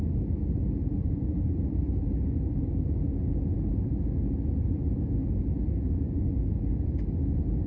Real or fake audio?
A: real